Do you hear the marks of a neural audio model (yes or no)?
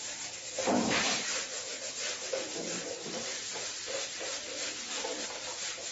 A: yes